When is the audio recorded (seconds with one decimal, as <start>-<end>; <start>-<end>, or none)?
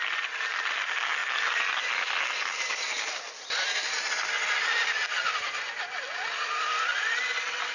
0.0-7.7